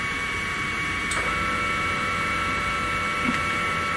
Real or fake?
fake